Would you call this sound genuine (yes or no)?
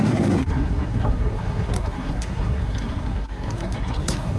no